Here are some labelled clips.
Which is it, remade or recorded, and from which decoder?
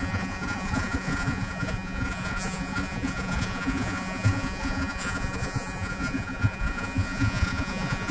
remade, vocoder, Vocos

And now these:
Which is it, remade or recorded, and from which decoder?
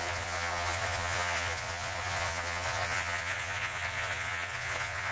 remade, vocoder, Vocos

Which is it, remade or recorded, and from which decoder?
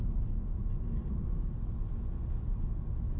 recorded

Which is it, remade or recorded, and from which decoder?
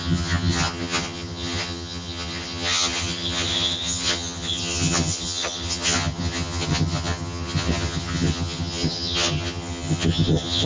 remade, vocoder, HiFi-GAN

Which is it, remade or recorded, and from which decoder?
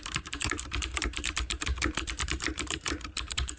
remade, vocoder, BigVGAN v2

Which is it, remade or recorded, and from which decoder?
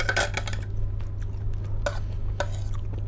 recorded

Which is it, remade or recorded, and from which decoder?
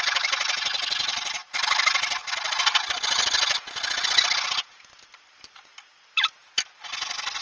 recorded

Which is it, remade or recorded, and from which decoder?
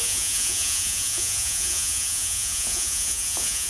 remade, vocoder, Vocos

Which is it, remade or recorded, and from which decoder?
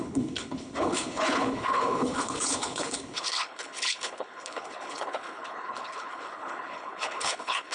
remade, codec, HILCodec